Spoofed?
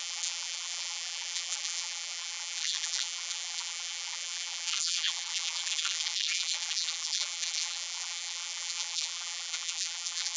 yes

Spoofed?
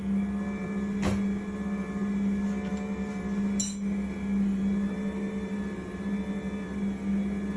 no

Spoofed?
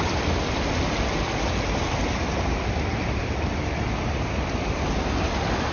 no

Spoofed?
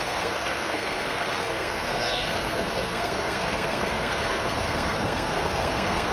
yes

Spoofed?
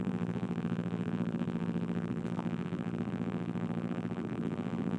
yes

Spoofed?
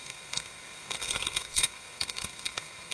yes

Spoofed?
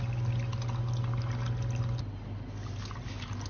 no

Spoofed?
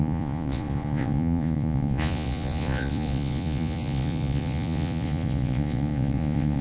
yes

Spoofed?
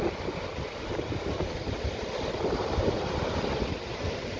no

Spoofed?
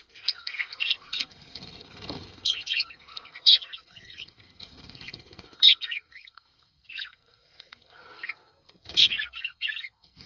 yes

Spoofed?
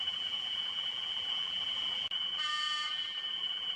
yes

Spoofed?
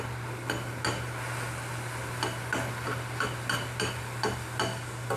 no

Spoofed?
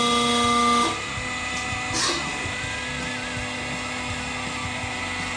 no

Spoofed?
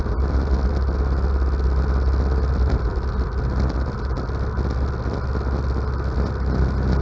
no